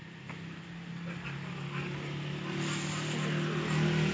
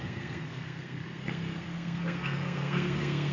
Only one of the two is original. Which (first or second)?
first